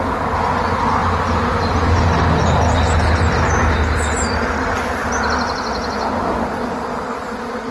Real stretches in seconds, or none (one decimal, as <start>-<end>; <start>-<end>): 0.0-7.7